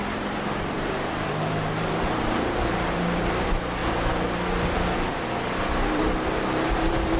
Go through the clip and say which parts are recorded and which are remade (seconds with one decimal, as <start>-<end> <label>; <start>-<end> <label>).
0.0-3.8 remade; 3.8-5.1 recorded; 5.1-7.2 remade